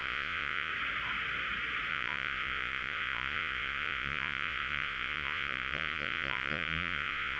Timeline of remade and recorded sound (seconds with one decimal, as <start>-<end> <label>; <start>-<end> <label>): 0.0-0.7 remade; 0.7-1.9 recorded; 1.9-7.4 remade